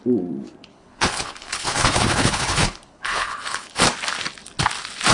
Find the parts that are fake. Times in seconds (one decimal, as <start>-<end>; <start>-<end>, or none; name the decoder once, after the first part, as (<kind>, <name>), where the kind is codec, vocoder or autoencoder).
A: 0.7-3.8 (codec, HILCodec)